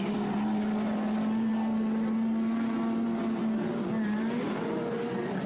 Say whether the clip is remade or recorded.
recorded